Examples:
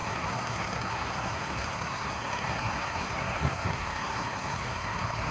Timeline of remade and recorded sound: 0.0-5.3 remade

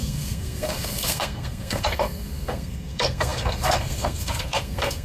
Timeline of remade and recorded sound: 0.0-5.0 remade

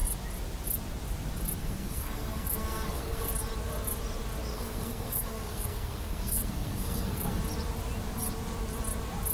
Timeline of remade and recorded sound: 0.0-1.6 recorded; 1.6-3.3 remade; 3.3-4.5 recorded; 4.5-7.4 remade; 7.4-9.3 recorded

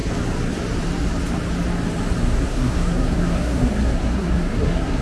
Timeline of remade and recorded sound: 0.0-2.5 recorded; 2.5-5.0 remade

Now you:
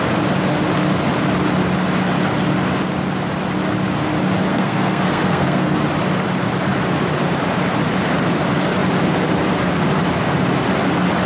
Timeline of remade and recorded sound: 0.0-4.5 recorded; 4.5-5.7 remade; 5.7-11.3 recorded